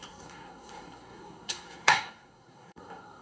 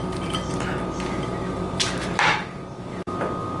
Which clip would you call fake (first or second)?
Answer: first